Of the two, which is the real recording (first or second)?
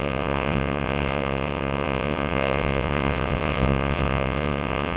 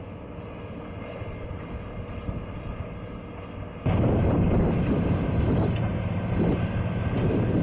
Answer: second